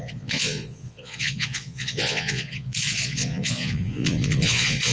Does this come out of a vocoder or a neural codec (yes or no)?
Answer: yes